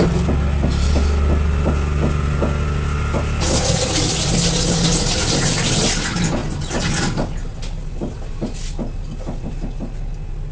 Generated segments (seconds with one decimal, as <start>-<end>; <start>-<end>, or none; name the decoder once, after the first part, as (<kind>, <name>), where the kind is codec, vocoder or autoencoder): none

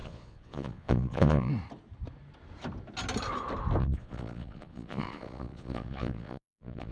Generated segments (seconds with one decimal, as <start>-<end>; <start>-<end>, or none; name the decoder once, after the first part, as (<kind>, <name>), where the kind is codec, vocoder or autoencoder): 0.0-1.5 (vocoder, Vocos); 3.8-6.9

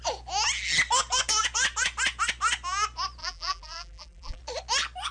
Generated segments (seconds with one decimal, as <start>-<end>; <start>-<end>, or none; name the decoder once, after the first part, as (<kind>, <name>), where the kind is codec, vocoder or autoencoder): 3.2-4.4 (vocoder, BigVGAN v2)

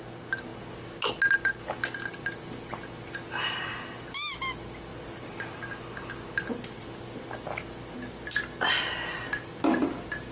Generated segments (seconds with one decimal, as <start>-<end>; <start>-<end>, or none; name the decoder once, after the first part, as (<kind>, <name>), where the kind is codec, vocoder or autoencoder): none